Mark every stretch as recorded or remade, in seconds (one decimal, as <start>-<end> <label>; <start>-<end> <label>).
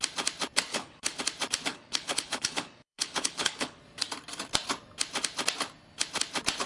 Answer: 0.0-0.7 recorded; 0.7-1.2 remade; 1.2-1.7 recorded; 1.7-3.8 remade; 3.8-6.7 recorded